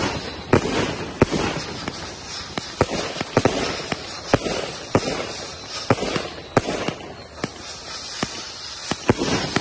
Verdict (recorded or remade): recorded